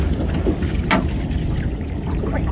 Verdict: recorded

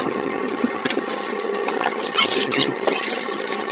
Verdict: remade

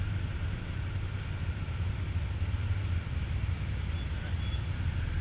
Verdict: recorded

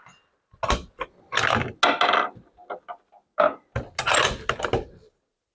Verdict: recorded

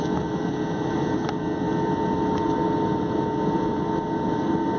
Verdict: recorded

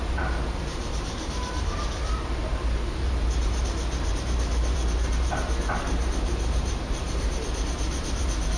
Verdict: remade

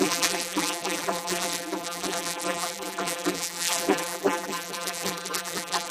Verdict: remade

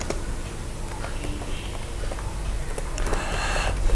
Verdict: recorded